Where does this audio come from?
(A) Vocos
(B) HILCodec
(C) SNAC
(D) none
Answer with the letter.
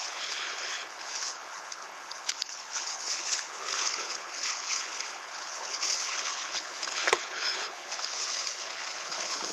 B